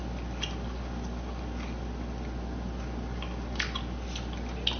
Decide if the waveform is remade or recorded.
recorded